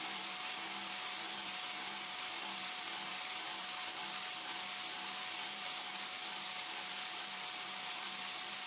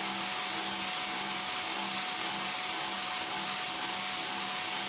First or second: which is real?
second